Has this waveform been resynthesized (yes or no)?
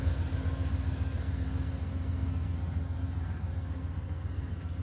yes